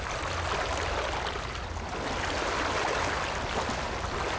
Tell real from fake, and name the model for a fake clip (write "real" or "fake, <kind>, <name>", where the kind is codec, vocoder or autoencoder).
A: real